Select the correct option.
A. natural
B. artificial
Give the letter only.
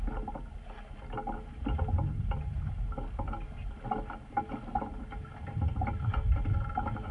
A